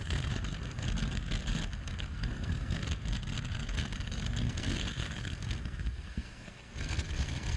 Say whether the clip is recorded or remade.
remade